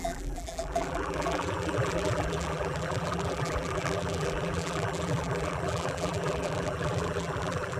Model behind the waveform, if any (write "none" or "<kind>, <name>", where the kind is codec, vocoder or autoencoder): vocoder, BigVGAN v2